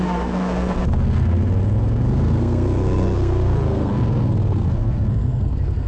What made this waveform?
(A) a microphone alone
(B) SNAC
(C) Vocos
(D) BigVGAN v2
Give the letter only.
B